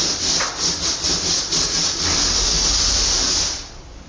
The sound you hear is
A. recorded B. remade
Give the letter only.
A